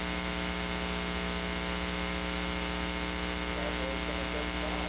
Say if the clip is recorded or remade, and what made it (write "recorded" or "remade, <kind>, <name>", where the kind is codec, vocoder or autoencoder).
recorded